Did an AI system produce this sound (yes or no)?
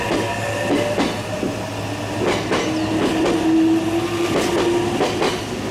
no